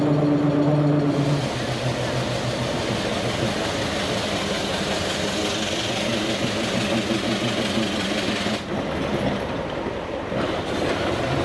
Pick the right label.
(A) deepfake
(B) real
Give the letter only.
B